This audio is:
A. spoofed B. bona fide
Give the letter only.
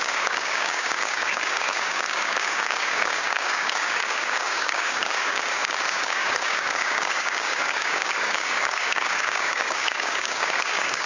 A